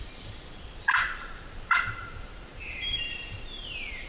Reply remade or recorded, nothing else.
remade